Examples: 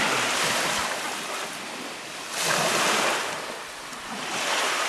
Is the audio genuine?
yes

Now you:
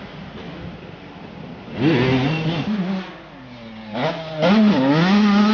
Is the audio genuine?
yes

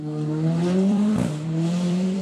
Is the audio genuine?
no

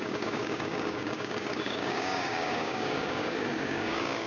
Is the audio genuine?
no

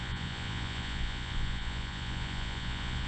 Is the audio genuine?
no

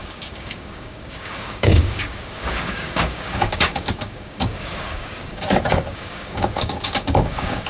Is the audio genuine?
no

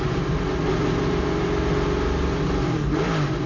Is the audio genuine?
yes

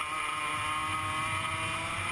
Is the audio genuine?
yes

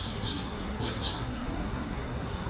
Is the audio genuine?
no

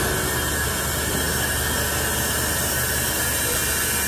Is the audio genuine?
yes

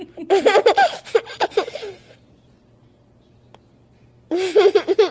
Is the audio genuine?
yes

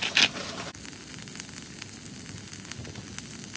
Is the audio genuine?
yes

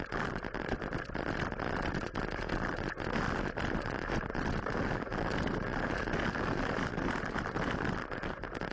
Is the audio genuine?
yes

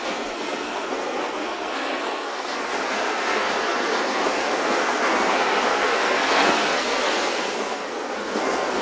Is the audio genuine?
no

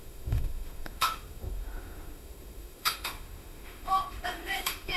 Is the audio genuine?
no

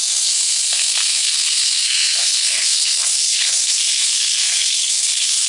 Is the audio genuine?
no